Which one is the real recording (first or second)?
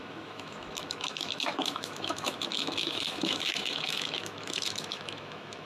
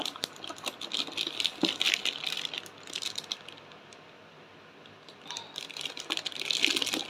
second